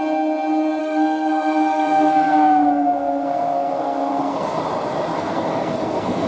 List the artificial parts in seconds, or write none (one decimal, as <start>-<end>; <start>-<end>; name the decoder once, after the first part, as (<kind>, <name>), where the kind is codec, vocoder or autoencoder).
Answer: 0.8-4.6 (codec, SNAC); 5.1-6.3